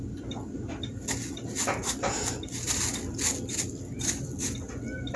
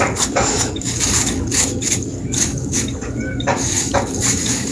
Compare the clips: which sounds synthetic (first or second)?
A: second